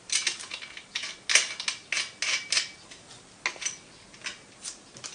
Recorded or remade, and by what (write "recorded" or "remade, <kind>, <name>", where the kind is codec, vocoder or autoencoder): recorded